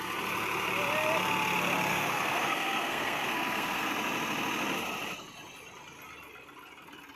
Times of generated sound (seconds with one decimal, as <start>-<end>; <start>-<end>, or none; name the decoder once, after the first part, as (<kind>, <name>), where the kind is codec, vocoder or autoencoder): 1.9-3.9 (codec, SNAC)